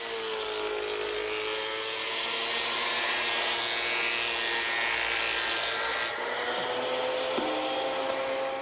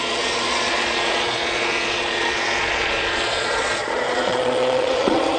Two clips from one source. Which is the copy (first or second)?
second